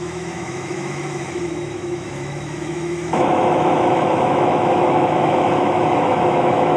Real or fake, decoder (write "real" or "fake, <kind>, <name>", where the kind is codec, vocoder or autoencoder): fake, autoencoder, DAC-VAE